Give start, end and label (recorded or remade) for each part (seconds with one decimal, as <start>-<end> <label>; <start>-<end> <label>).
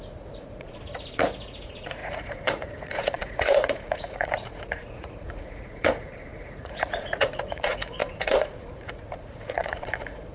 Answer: 0.0-10.3 remade